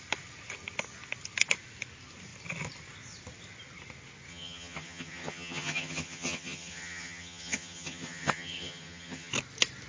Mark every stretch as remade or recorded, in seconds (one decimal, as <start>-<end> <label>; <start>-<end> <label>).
0.0-4.3 recorded; 4.3-9.3 remade; 9.3-9.9 recorded